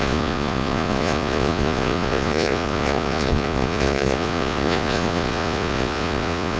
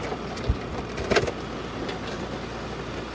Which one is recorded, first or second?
second